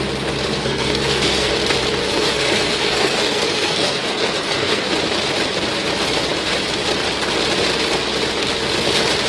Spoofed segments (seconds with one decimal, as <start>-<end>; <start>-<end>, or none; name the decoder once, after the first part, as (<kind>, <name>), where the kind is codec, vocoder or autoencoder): 0.5-1.5 (codec, SNAC); 2.0-4.9